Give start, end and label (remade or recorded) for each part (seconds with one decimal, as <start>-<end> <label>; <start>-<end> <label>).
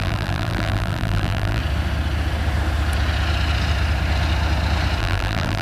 0.0-1.6 remade; 1.6-5.0 recorded; 5.0-5.6 remade